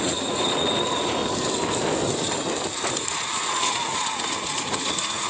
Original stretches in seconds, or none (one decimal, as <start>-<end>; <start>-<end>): 1.2-2.9